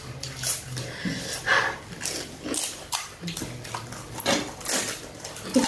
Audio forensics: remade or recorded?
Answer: recorded